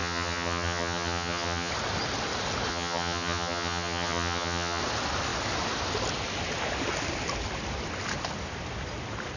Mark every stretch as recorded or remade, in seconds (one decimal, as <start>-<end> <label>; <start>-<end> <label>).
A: 0.0-1.7 remade; 1.7-2.7 recorded; 2.7-4.8 remade; 4.8-9.4 recorded